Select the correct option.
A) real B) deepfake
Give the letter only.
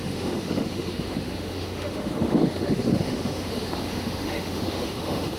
B